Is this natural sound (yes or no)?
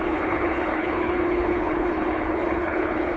no